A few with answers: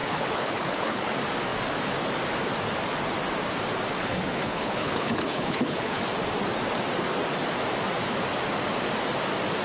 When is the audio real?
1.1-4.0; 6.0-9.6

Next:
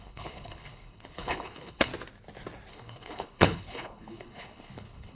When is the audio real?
1.9-2.7

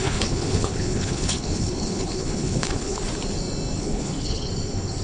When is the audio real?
3.0-3.8; 4.5-5.0

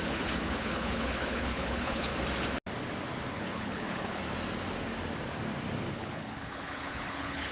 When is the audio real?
2.1-3.3; 4.2-5.9

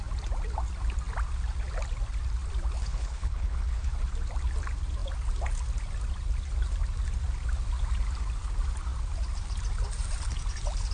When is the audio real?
0.0-2.8; 3.9-10.9

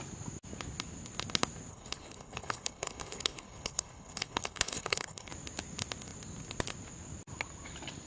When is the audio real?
0.0-1.7; 5.3-8.1